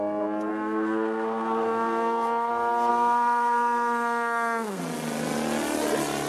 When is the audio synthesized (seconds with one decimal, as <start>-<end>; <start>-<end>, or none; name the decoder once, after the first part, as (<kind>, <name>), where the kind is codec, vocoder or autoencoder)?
0.5-2.5 (codec, SNAC); 2.9-4.8